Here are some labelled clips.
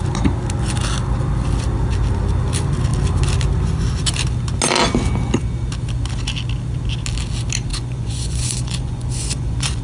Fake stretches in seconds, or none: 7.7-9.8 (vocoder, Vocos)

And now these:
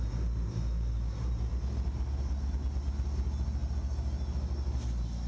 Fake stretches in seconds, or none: none

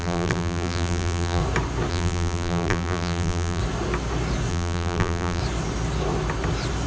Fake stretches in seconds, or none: 0.0-1.4 (vocoder, BigVGAN v2); 1.9-3.6; 4.5-5.4

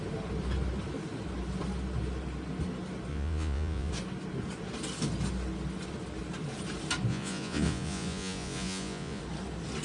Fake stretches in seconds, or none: 3.1-3.9 (vocoder, Vocos); 7.1-9.2

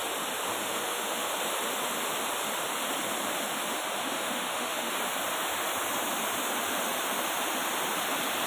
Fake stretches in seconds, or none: 0.6-1.3 (autoencoder, DAC-VAE); 4.0-4.9

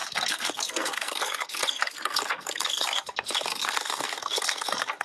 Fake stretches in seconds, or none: 0.0-5.0 (codec, SNAC)

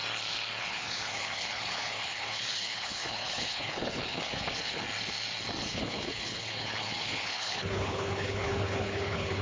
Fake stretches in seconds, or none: 0.6-4.8 (codec, HILCodec); 5.7-9.4

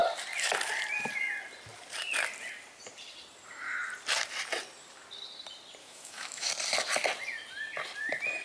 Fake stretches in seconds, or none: 5.8-6.5 (autoencoder, DAC-VAE)